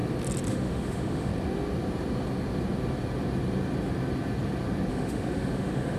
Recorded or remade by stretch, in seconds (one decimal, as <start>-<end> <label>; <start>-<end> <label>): 0.0-0.5 recorded; 0.5-1.3 remade; 1.3-4.9 recorded; 4.9-6.0 remade